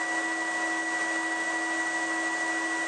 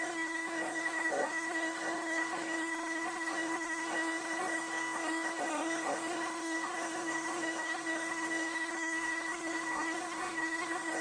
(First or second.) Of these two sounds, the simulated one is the second